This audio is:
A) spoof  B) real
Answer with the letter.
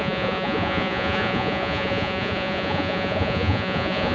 A